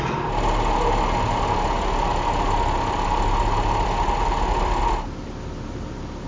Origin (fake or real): real